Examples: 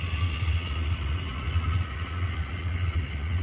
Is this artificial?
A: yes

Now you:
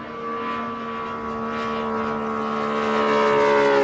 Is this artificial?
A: no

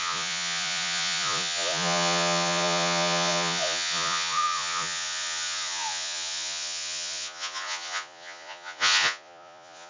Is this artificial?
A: yes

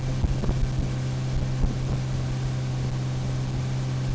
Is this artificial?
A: no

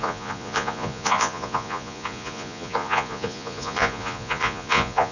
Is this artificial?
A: yes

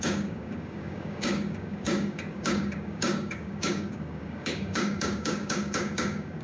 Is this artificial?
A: yes